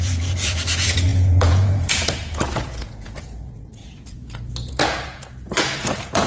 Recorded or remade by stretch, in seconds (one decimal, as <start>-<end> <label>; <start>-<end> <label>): 0.0-6.3 remade